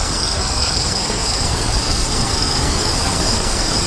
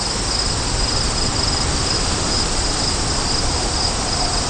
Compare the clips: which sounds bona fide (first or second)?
second